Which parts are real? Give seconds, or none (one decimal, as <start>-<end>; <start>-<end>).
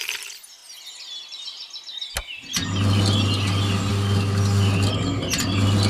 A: 0.0-5.9